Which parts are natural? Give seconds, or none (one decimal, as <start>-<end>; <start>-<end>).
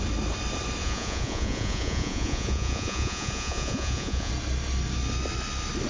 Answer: 0.0-0.8; 4.3-5.9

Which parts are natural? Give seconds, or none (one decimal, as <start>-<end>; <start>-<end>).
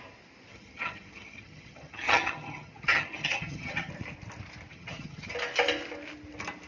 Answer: 0.0-0.5; 3.9-4.7; 5.3-6.7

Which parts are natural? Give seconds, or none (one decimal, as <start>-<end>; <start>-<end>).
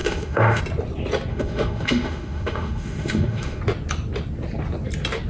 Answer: 0.6-1.3; 3.6-5.3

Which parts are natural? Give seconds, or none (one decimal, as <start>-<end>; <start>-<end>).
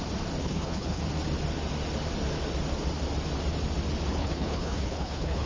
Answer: 0.0-0.4; 1.0-4.2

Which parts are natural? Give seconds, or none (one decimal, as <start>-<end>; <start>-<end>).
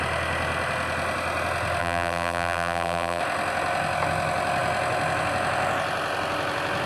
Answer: 0.0-1.8; 3.2-6.9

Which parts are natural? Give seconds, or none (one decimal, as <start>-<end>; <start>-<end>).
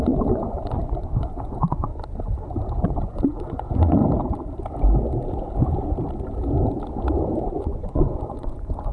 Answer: 1.9-2.7; 4.0-7.4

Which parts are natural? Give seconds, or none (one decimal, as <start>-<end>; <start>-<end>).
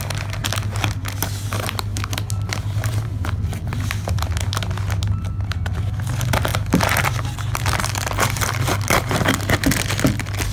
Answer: 0.0-6.5; 9.2-10.5